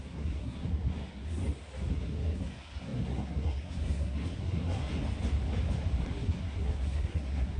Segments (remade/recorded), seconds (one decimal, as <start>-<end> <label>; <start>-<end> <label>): 0.0-1.4 remade; 1.4-1.9 recorded; 1.9-4.9 remade; 4.9-6.0 recorded; 6.0-7.6 remade